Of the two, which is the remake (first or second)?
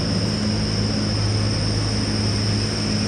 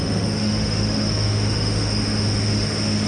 second